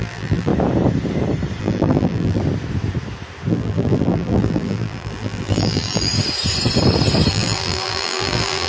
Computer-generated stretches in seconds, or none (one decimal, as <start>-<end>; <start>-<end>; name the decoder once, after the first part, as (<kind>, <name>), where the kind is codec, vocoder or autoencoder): 0.0-0.5 (vocoder, BigVGAN v2); 1.6-2.4; 3.5-6.1; 7.3-8.7